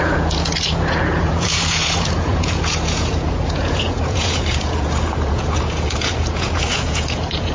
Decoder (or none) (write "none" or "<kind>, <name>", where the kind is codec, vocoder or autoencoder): vocoder, Vocos